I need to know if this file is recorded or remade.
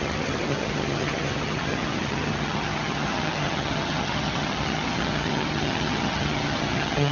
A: remade